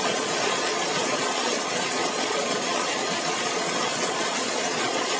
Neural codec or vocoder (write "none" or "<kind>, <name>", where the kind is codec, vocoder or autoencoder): vocoder, Vocos